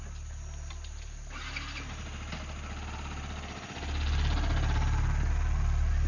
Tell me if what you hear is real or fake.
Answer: real